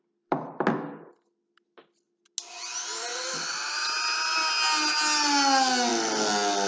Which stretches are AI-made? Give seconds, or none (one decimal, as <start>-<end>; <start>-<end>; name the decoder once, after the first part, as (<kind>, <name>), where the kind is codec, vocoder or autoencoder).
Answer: none